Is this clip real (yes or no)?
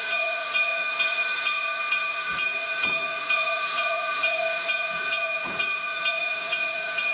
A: no